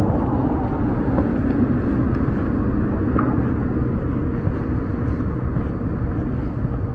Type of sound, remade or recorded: recorded